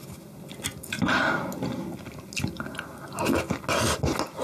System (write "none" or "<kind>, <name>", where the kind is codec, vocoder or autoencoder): none